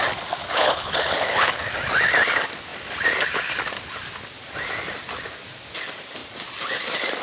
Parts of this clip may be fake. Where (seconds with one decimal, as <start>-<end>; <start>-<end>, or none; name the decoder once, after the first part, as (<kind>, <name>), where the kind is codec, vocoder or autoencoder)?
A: 0.4-1.6 (codec, HILCodec)